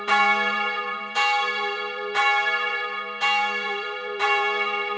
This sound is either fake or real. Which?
fake